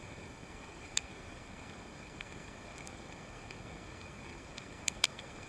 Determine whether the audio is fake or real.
fake